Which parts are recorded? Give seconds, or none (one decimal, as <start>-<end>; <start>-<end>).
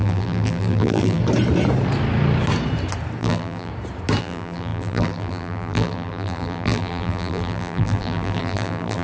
1.2-3.2; 3.7-4.2